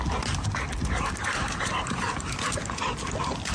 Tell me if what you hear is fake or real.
real